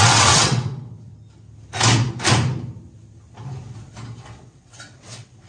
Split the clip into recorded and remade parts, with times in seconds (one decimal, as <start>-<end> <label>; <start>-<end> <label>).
0.0-1.1 remade; 1.1-4.4 recorded; 4.4-5.5 remade